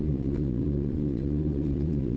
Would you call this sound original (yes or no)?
no